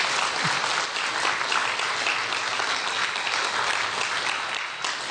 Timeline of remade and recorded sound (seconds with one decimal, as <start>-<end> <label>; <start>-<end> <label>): 0.0-5.1 recorded